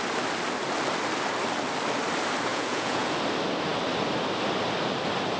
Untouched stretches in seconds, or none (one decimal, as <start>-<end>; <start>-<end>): 0.0-2.5; 3.1-5.4